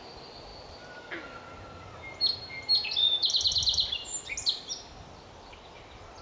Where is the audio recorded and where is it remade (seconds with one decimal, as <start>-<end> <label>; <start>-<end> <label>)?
0.0-6.2 recorded